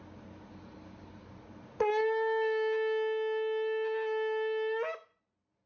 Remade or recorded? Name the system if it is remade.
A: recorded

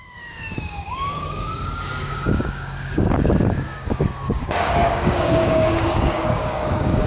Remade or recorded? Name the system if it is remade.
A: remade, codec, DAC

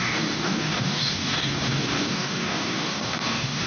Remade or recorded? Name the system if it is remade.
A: remade, codec, DAC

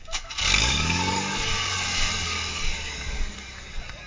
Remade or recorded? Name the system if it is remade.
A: remade, codec, DAC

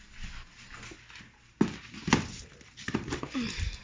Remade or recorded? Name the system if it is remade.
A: recorded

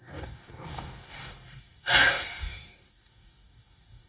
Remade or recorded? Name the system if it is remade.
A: remade, codec, DAC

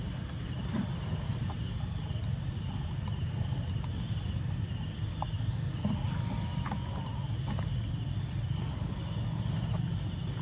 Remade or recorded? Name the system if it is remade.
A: recorded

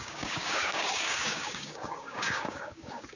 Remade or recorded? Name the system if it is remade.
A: remade, codec, DAC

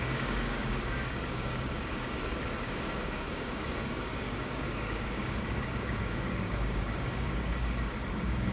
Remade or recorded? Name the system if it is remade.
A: remade, codec, DAC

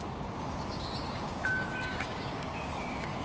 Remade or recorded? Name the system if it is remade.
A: remade, codec, DAC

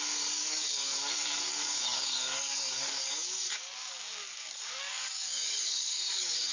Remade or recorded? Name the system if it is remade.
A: remade, codec, DAC